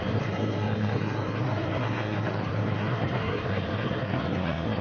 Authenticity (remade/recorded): remade